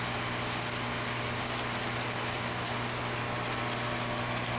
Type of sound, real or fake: real